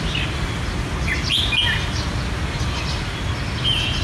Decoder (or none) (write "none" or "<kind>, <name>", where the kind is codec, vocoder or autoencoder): none